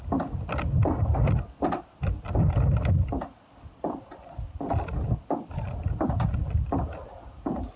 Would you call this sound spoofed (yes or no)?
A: no